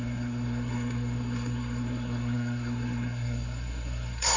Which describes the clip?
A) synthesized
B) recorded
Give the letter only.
A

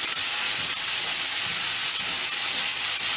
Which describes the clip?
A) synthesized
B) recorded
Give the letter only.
B